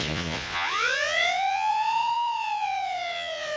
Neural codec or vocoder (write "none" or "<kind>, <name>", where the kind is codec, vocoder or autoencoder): vocoder, Vocos